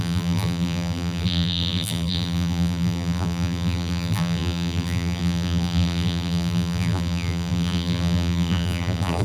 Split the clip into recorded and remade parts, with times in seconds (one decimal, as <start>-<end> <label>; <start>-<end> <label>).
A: 0.0-9.2 remade